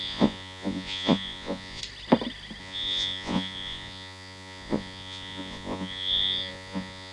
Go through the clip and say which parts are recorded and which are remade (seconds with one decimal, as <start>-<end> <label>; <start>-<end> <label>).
0.0-1.8 remade; 1.8-2.6 recorded; 2.6-7.1 remade